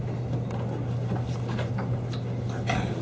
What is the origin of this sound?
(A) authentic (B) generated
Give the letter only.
A